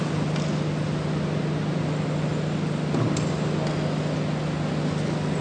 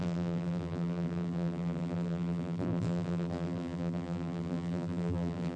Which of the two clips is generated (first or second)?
second